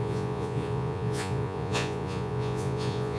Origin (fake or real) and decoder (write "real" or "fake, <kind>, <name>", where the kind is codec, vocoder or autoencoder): fake, vocoder, Vocos